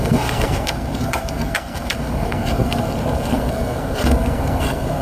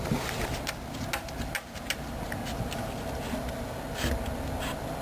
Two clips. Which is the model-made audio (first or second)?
first